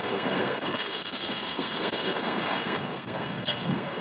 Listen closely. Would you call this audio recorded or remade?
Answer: remade